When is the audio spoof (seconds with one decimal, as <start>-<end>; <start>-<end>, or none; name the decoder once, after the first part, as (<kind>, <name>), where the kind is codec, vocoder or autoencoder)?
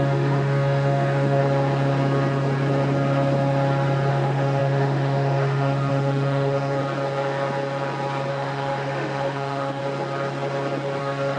0.0-1.4 (autoencoder, DAC-VAE); 4.1-6.8; 8.3-9.8; 11.0-11.4